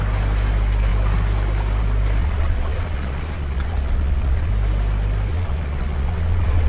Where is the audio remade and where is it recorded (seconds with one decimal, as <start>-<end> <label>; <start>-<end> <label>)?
0.0-2.2 recorded; 2.2-4.5 remade; 4.5-5.3 recorded; 5.3-6.7 remade